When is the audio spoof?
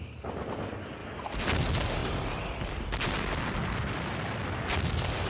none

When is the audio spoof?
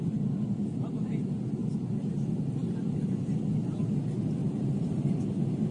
1.6-2.1 (vocoder, BigVGAN v2); 4.4-5.1